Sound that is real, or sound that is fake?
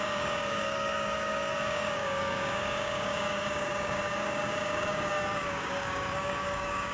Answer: fake